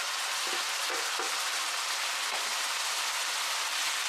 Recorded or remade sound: recorded